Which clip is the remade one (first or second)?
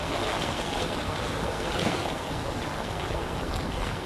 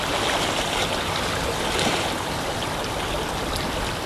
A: first